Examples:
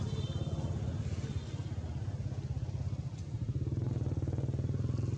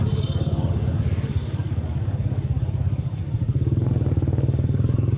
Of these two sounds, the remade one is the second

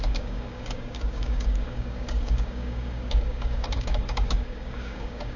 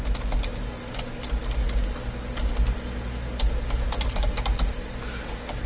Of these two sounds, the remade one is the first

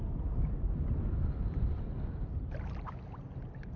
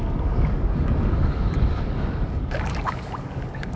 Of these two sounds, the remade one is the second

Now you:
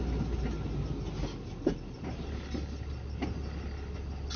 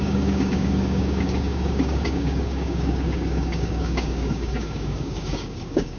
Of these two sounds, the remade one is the second